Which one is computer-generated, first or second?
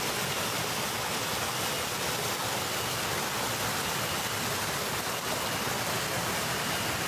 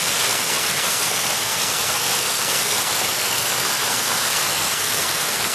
second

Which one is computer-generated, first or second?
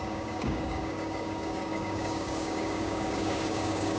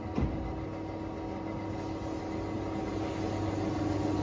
first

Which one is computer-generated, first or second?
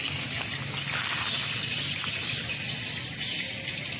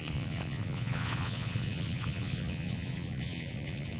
second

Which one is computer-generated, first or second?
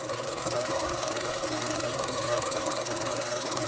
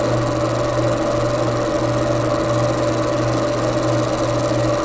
first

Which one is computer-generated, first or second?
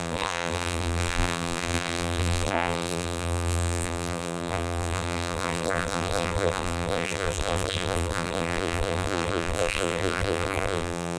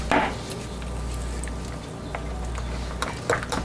first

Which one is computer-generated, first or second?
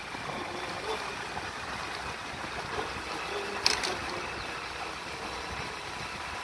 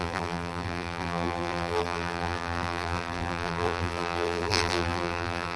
second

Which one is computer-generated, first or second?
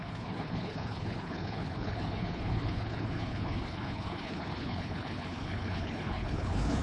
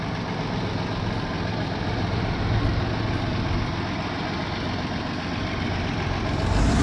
first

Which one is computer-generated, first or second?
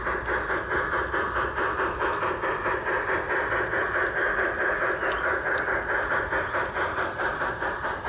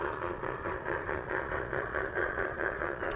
second